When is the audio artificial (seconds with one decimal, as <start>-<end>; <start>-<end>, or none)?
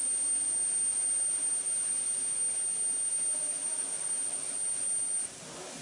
none